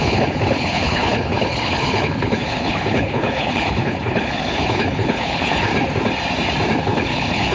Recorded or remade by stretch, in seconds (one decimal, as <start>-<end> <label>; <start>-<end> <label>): 0.0-5.7 remade; 5.7-6.8 recorded; 6.8-7.5 remade